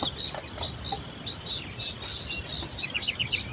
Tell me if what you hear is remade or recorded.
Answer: remade